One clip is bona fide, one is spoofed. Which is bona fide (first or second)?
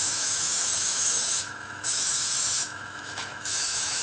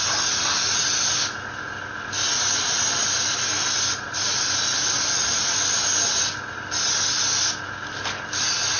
second